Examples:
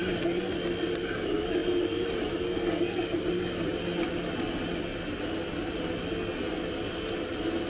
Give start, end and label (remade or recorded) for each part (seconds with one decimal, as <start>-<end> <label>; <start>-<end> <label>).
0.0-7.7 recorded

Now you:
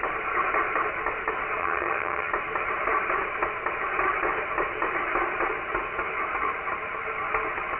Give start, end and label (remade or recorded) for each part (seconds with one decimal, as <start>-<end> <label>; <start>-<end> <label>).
0.0-1.6 recorded; 1.6-2.3 remade; 2.3-7.8 recorded

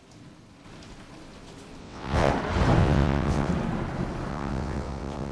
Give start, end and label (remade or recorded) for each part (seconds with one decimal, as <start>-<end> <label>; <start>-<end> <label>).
0.0-1.8 recorded; 1.8-2.3 remade; 2.3-2.8 recorded; 2.8-3.5 remade; 3.5-4.3 recorded; 4.3-5.3 remade

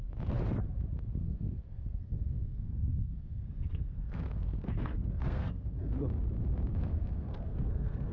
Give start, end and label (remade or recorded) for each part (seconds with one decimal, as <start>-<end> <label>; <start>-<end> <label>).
0.0-1.2 recorded; 1.2-5.9 remade; 5.9-6.8 recorded; 6.8-8.1 remade